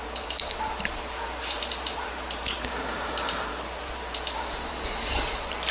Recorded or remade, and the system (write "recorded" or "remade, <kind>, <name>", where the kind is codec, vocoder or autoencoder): remade, vocoder, BigVGAN v2